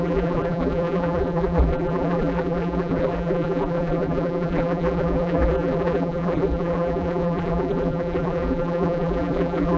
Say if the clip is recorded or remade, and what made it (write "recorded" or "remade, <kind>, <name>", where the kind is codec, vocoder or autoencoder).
remade, vocoder, BigVGAN v2